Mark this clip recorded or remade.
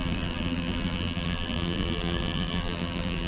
remade